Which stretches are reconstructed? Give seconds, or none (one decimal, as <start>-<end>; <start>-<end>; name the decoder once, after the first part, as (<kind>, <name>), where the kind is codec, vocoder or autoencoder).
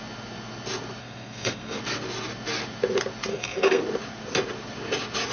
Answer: 1.0-1.8 (codec, SNAC); 3.3-3.8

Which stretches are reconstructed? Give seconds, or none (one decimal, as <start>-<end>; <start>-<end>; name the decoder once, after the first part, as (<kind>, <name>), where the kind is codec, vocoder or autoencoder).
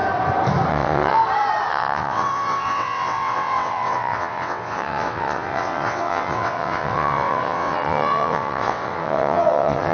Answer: 0.7-1.2 (vocoder, WaveNeXt); 1.7-9.9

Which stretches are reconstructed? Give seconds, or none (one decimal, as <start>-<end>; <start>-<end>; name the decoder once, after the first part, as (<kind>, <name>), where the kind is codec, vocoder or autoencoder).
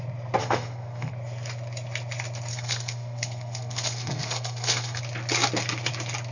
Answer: 0.4-1.1 (codec, SNAC); 2.5-5.0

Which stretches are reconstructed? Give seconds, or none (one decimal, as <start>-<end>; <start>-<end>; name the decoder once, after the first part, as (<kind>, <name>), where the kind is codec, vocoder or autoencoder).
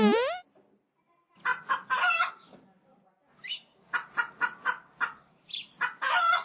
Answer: 1.5-2.3 (vocoder, BigVGAN v2)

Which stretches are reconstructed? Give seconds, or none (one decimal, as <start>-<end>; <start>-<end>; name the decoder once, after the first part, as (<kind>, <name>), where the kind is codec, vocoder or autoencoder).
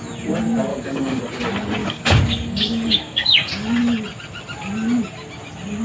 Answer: 0.7-1.2 (codec, DAC); 1.8-3.5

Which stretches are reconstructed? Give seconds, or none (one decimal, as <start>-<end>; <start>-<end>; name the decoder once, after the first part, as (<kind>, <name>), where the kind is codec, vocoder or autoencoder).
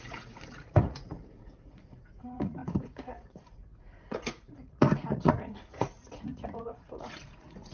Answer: 0.0-7.7 (vocoder, Vocos)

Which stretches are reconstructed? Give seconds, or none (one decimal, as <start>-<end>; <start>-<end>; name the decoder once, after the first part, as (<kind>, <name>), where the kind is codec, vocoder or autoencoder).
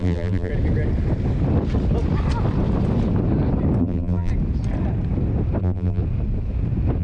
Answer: 0.0-0.5 (vocoder, BigVGAN v2); 3.8-4.3; 5.6-6.0